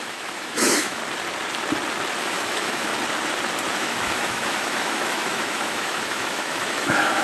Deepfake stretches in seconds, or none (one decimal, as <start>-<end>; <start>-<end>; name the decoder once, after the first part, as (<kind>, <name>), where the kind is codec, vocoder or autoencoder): 0.0-1.0 (autoencoder, DAC-VAE); 2.2-2.9; 3.7-7.2